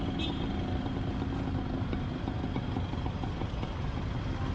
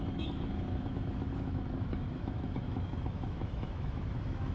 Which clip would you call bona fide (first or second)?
first